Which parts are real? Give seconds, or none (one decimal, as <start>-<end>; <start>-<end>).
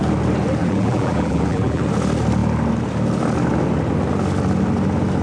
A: 0.0-0.6; 1.8-5.2